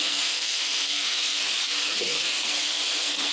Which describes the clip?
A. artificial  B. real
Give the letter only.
A